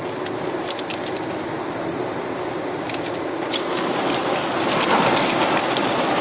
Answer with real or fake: real